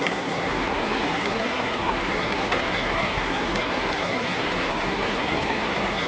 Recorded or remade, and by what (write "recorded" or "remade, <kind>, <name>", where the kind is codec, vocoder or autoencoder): remade, codec, SNAC